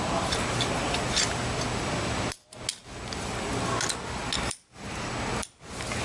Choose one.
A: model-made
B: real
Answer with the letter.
B